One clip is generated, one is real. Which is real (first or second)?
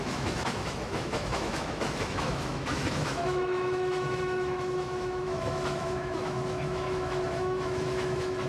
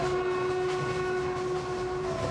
second